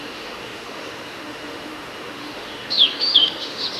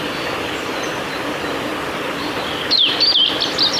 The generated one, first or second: first